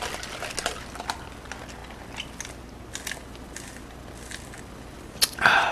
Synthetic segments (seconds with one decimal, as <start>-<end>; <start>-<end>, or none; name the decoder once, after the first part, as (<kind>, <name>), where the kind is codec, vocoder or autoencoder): none

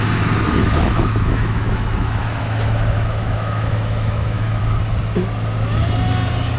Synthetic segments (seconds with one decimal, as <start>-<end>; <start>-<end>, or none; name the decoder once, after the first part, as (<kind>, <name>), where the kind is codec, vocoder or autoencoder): 0.6-4.6 (autoencoder, DAC-VAE)

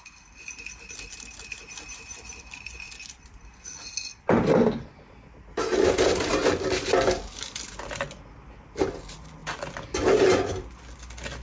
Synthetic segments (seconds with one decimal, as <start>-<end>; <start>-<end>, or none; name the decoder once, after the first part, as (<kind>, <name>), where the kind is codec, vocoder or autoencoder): none

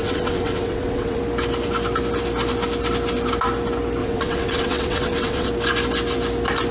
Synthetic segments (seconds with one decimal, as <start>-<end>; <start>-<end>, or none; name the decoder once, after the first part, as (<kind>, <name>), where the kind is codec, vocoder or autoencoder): 0.0-1.2 (vocoder, WaveNeXt); 4.0-5.5